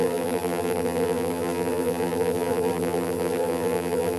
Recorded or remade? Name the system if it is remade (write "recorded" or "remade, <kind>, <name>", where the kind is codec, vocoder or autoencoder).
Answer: remade, vocoder, BigVGAN v2